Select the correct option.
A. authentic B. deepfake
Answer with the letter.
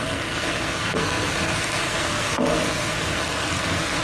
B